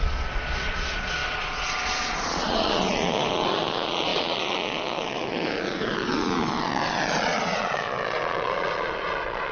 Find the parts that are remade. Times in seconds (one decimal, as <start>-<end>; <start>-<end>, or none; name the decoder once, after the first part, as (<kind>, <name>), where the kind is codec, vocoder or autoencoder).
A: 0.0-9.5 (vocoder, Vocos)